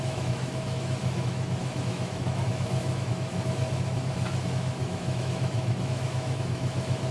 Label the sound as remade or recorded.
remade